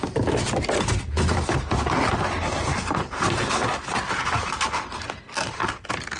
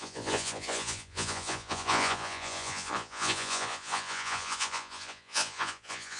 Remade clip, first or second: second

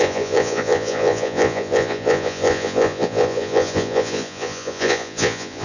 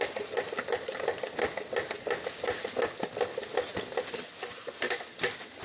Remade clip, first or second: first